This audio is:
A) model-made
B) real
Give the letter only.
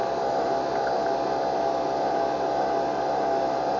B